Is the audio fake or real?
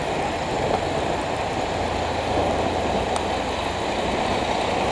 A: real